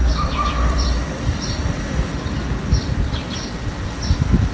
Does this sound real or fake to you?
fake